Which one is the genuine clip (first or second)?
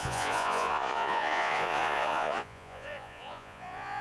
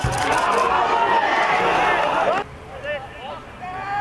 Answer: second